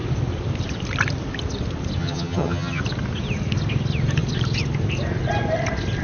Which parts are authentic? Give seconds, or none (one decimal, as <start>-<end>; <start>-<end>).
0.0-2.0; 2.8-6.0